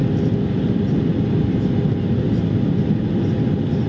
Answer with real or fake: real